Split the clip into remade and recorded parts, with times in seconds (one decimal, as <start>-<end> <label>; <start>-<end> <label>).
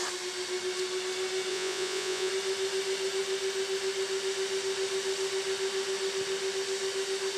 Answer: 0.0-1.5 recorded; 1.5-2.3 remade; 2.3-7.4 recorded